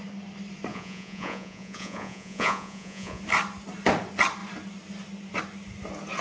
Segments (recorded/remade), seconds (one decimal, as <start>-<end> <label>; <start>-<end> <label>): 0.0-0.7 recorded; 0.7-3.2 remade; 3.2-6.2 recorded